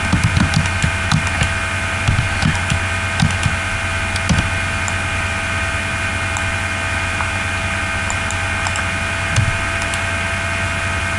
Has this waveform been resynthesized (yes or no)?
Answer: no